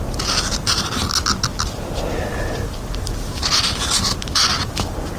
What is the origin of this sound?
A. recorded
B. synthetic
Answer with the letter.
A